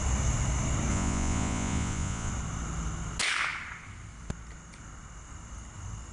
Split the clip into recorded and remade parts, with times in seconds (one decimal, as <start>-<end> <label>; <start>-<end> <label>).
0.0-0.9 recorded; 0.9-2.3 remade; 2.3-6.1 recorded